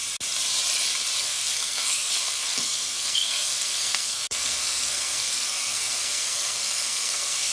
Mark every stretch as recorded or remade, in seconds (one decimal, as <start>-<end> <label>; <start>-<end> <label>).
0.0-1.2 recorded; 1.2-7.5 remade

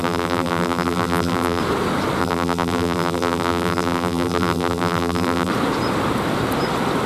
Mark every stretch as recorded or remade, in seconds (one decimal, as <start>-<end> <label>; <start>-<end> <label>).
0.0-1.6 remade; 1.6-2.2 recorded; 2.2-5.5 remade; 5.5-7.1 recorded

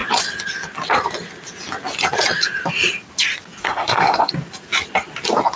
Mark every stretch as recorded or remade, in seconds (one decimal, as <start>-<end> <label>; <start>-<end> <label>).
0.0-3.6 recorded; 3.6-4.3 remade; 4.3-5.6 recorded

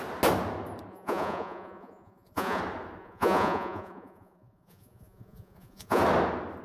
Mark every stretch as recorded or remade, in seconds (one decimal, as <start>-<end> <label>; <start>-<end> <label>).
0.0-0.9 recorded; 0.9-2.6 remade; 2.6-3.0 recorded; 3.0-6.0 remade; 6.0-6.6 recorded